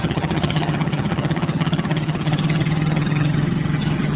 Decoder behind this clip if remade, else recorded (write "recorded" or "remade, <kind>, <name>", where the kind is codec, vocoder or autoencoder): remade, vocoder, HiFi-GAN